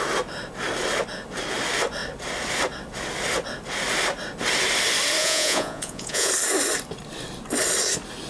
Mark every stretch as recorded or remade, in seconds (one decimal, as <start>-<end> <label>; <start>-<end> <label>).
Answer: 0.0-5.2 recorded; 5.2-6.3 remade; 6.3-8.3 recorded